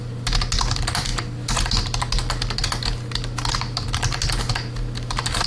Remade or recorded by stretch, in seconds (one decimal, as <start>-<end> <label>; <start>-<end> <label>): 0.0-5.5 recorded